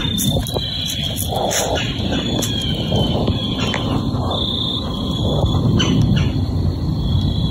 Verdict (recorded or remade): recorded